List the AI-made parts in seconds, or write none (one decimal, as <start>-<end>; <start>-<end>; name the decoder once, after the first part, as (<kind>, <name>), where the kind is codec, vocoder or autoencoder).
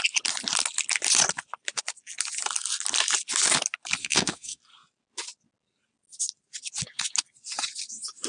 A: 4.0-4.6 (autoencoder, DAC-VAE)